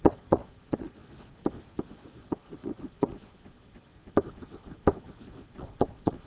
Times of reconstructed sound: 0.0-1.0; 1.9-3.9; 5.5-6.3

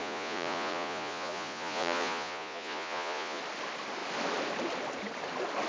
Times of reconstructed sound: 0.0-3.4

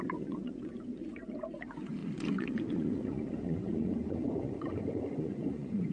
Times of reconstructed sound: 0.0-5.9